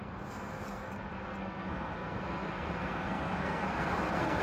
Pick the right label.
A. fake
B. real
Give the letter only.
A